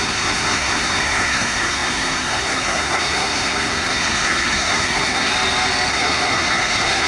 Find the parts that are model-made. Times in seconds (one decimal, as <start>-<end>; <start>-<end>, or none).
0.0-5.3; 5.9-7.1